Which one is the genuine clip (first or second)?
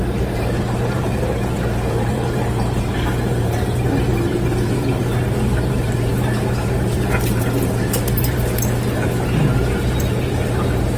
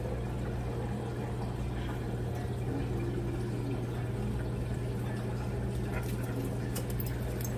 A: second